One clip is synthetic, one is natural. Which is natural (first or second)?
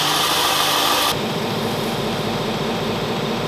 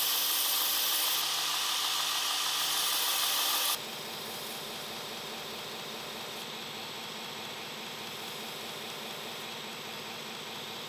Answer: second